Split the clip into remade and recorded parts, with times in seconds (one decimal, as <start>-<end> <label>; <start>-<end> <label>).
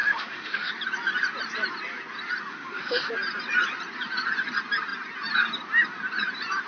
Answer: 0.0-0.7 remade; 0.7-2.5 recorded; 2.5-3.1 remade; 3.1-6.7 recorded